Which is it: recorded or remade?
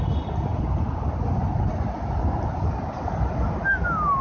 recorded